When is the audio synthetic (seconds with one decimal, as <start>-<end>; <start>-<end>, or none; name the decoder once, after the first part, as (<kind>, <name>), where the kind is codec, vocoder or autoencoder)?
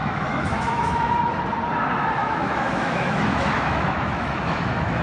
0.0-1.1 (autoencoder, DAC-VAE); 2.2-5.0